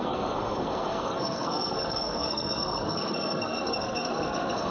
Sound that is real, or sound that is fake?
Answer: fake